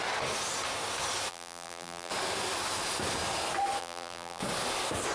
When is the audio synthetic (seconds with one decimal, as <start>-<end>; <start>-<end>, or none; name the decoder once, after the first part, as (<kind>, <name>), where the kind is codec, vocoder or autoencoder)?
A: 1.3-2.1 (vocoder, BigVGAN v2); 3.8-4.4

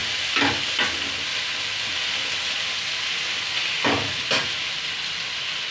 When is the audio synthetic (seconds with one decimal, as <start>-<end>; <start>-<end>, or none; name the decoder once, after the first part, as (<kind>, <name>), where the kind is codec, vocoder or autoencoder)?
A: none

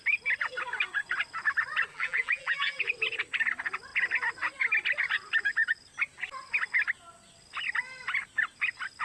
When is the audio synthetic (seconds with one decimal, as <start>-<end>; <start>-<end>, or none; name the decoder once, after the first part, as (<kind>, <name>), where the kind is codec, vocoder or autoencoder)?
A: 1.9-2.8 (vocoder, BigVGAN v2)